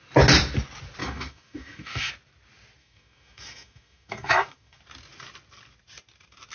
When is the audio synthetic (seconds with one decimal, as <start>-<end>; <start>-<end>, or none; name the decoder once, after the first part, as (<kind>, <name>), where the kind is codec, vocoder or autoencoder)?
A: 1.0-2.1 (autoencoder, DAC-VAE); 2.8-4.8